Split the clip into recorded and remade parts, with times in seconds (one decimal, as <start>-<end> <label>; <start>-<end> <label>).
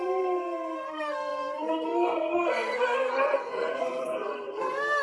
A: 0.0-5.0 remade